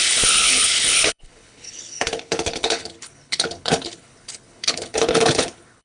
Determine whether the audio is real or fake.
fake